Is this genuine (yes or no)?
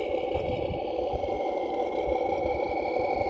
yes